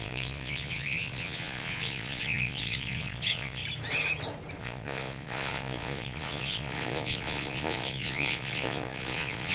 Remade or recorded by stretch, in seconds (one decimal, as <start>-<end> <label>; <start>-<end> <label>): 0.0-3.6 remade; 3.6-4.6 recorded; 4.6-9.5 remade